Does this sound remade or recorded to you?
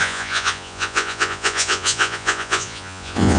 remade